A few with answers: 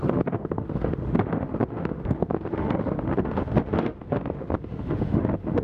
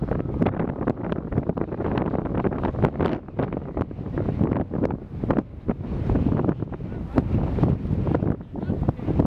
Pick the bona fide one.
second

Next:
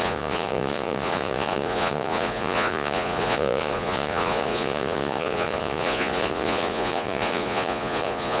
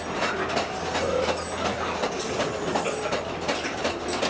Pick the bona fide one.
second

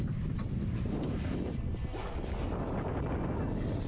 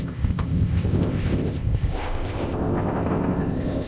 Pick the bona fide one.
first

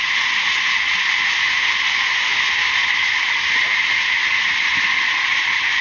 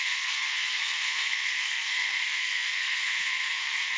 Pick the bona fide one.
first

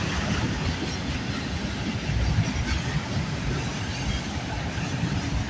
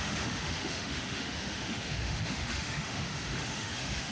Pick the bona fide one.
first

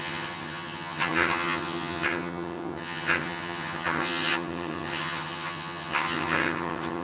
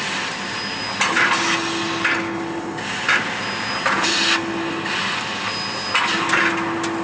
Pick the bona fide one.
second